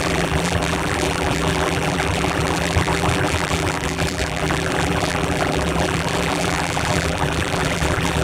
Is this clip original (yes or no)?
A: no